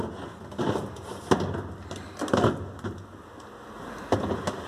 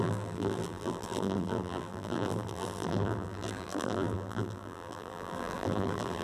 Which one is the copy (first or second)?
second